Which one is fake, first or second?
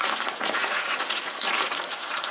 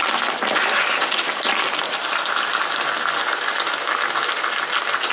first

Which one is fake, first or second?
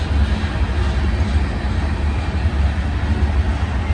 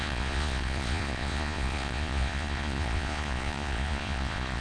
second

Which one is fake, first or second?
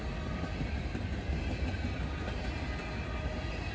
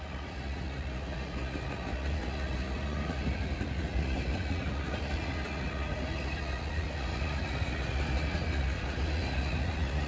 second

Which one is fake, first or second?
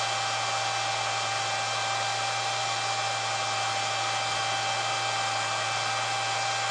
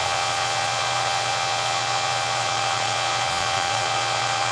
second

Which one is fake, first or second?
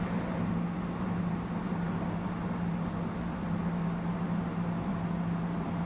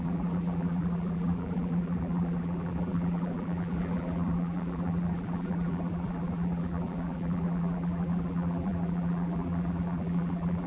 second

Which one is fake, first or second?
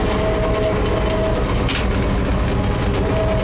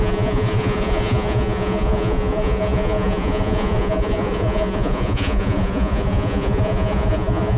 second